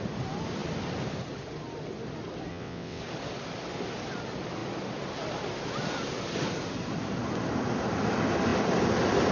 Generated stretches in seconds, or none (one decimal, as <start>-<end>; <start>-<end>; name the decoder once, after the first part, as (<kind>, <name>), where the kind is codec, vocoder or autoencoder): 2.5-3.0 (vocoder, WaveNeXt)